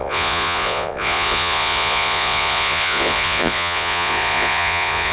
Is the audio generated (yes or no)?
yes